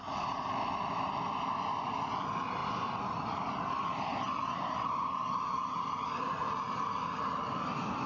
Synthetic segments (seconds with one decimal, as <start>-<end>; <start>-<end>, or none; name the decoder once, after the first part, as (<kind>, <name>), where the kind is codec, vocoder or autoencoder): none